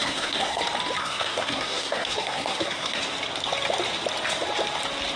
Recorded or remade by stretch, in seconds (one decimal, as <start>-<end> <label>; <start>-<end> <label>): 0.0-0.6 remade; 0.6-1.0 recorded; 1.0-3.0 remade; 3.0-5.2 recorded